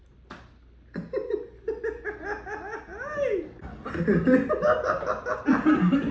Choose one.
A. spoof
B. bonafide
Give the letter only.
B